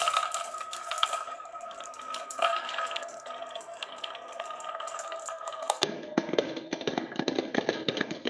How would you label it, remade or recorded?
remade